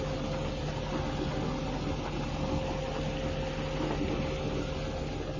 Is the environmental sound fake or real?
real